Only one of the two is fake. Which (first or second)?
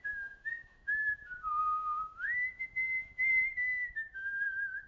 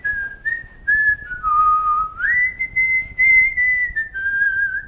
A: first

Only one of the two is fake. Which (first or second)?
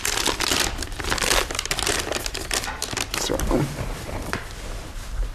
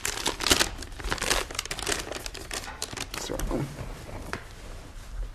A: first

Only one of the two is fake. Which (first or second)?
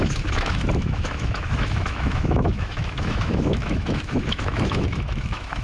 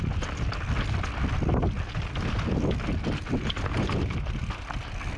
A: first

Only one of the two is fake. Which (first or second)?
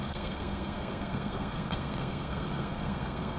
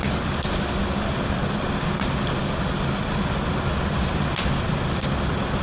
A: first